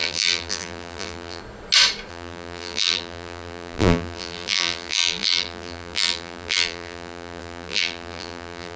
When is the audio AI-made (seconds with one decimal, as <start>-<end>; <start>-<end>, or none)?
0.0-1.4; 2.1-8.8